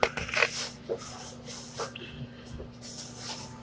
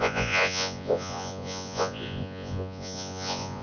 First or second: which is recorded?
first